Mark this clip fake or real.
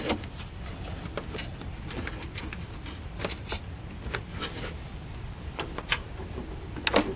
real